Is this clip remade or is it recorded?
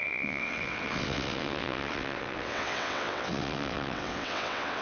remade